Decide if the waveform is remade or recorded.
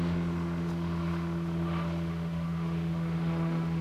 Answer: remade